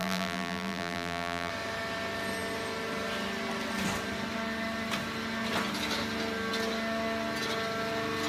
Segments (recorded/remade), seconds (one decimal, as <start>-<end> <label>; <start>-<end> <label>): 0.0-1.5 remade; 1.5-8.3 recorded